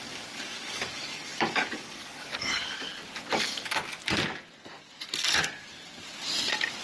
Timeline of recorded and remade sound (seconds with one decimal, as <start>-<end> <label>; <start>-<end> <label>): 0.0-2.9 remade; 2.9-3.4 recorded; 3.4-4.0 remade; 4.0-6.8 recorded